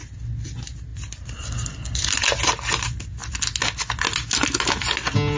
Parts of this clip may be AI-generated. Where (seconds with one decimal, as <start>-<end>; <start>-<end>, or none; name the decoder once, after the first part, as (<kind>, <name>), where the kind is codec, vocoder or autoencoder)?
0.9-2.2 (vocoder, BigVGAN v2)